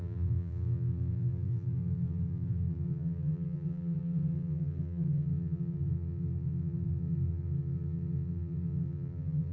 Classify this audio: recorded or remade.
remade